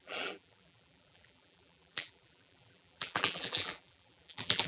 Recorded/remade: remade